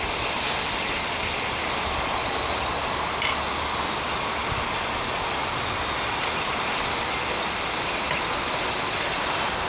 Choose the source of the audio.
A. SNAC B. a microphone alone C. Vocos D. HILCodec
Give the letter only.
B